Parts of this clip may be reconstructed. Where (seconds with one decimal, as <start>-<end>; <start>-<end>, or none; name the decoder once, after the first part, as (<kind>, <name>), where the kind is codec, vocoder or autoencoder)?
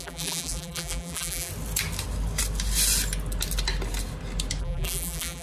0.0-1.5 (vocoder, BigVGAN v2); 4.6-5.4